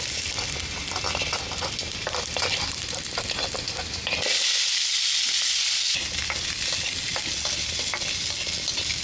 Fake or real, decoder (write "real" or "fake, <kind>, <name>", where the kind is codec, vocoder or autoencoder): real